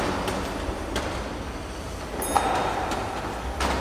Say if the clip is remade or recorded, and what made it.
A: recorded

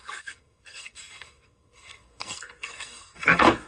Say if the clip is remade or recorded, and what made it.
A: remade, codec, SNAC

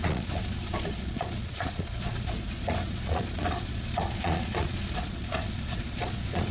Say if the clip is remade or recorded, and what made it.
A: remade, vocoder, Vocos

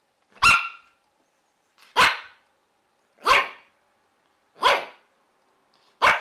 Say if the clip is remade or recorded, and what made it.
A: recorded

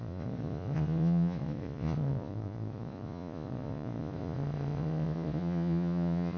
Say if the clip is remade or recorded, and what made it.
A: remade, vocoder, Vocos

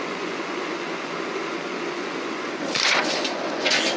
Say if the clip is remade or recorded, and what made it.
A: remade, vocoder, Vocos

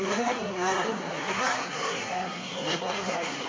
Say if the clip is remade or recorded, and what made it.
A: remade, codec, SNAC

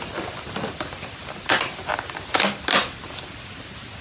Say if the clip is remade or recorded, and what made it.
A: recorded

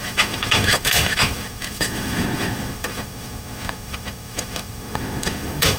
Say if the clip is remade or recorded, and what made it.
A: remade, autoencoder, DAC-VAE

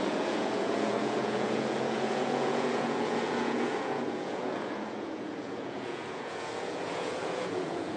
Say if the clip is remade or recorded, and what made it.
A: remade, vocoder, Vocos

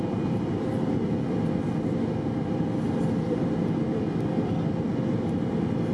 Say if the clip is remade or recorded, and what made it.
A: recorded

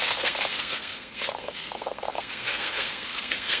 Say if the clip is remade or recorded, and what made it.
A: remade, codec, SNAC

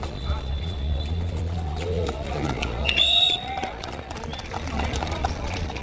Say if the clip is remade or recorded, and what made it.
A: remade, vocoder, Vocos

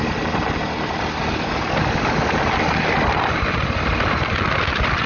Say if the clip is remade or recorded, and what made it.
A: recorded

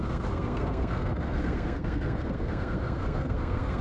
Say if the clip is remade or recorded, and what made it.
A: remade, codec, SNAC